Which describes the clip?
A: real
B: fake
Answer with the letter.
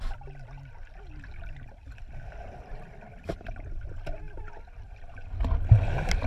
A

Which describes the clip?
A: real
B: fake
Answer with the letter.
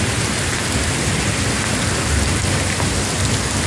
A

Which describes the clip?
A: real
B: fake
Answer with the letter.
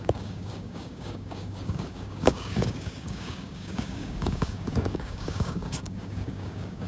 B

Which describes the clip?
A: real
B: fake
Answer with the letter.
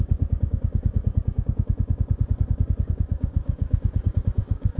B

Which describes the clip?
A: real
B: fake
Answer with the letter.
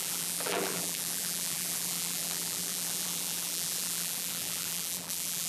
B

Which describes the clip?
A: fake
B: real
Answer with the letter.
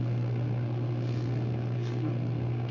A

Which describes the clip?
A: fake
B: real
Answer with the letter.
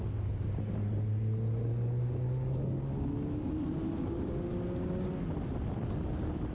B